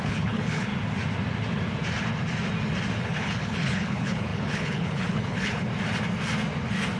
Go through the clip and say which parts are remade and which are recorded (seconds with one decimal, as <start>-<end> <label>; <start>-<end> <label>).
0.0-0.7 remade; 0.7-3.0 recorded; 3.0-5.7 remade; 5.7-7.0 recorded